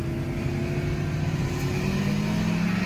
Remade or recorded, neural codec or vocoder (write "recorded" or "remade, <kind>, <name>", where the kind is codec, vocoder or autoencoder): recorded